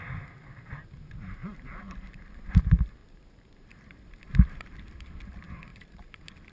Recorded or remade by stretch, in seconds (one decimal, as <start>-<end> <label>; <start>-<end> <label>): 0.0-1.4 recorded; 1.4-2.3 remade; 2.3-3.0 recorded; 3.0-5.1 remade; 5.1-5.7 recorded; 5.7-6.5 remade